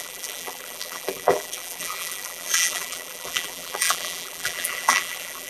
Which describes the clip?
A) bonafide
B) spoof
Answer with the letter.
B